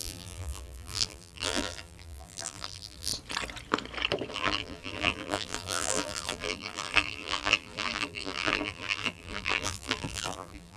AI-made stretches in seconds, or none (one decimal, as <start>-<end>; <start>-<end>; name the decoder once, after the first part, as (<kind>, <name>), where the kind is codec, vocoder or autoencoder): 0.0-3.1 (vocoder, BigVGAN v2); 4.3-10.8

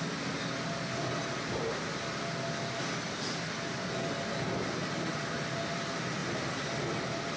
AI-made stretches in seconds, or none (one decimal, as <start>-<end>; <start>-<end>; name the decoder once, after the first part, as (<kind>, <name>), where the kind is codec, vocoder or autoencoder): none

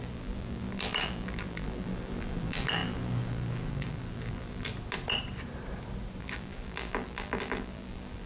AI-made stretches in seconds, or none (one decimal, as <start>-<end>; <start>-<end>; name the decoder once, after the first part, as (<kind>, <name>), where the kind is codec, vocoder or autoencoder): 0.0-4.7 (vocoder, BigVGAN v2); 6.2-8.3

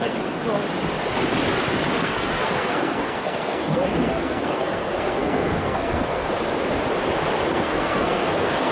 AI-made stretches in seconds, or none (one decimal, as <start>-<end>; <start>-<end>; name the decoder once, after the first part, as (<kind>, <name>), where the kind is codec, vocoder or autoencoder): 0.0-0.4 (codec, SNAC); 2.0-6.3; 7.5-8.7

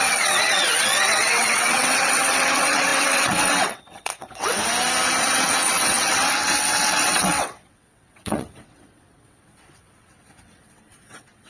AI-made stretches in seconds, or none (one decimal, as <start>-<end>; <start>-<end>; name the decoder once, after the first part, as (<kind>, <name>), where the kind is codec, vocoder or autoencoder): 0.0-4.6 (vocoder, WaveNeXt); 5.2-11.5

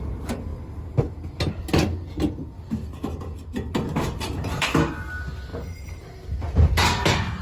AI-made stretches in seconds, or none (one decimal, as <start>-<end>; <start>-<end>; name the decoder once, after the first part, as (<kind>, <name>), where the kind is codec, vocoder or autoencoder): none